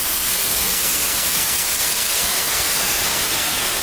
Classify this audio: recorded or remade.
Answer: remade